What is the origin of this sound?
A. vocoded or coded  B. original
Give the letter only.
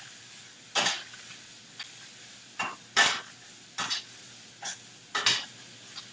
B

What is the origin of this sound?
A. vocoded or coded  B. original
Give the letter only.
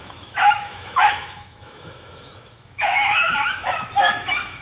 A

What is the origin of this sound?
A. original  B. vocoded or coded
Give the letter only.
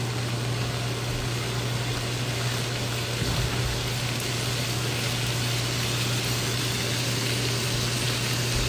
A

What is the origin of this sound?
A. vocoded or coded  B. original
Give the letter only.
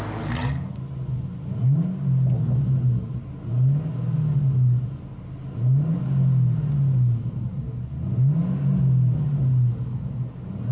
B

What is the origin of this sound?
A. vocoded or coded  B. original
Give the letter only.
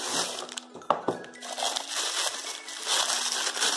B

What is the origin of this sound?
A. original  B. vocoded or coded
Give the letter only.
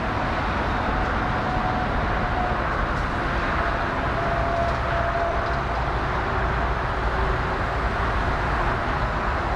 A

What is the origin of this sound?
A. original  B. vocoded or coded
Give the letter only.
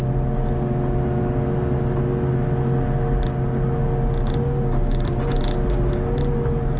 A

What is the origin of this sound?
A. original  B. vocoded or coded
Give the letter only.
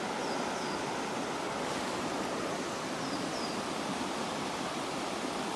A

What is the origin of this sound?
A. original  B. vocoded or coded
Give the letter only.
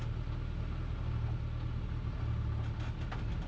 A